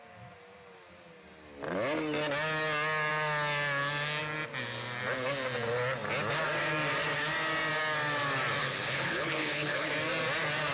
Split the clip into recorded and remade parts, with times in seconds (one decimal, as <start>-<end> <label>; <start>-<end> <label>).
0.0-8.6 recorded; 8.6-9.9 remade; 9.9-10.7 recorded